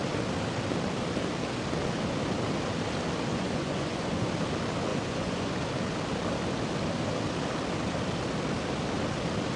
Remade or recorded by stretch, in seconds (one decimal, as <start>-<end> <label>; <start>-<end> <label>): 0.0-3.3 recorded; 3.3-4.3 remade; 4.3-4.9 recorded; 4.9-5.5 remade; 5.5-9.6 recorded